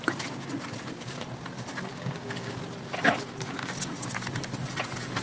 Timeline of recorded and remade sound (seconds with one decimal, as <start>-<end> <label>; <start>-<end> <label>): 0.0-1.9 recorded; 1.9-2.5 remade; 2.5-5.2 recorded